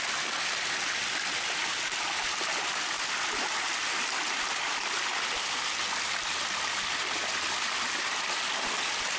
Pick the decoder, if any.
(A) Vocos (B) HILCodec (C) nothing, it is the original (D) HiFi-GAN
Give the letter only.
C